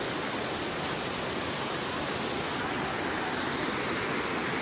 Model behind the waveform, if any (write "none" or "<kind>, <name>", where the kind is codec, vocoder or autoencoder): none